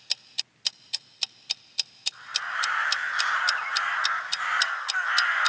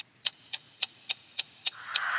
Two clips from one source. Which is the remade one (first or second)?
second